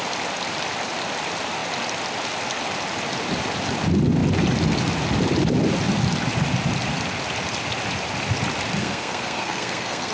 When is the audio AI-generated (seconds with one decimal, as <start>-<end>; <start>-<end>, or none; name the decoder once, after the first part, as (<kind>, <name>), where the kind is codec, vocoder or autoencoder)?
8.8-10.1 (codec, SNAC)